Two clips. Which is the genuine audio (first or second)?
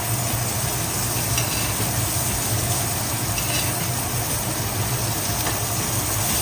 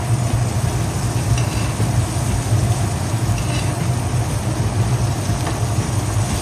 first